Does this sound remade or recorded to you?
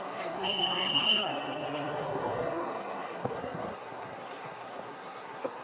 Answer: remade